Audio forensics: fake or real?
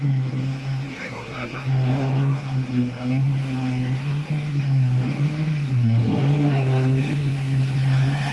fake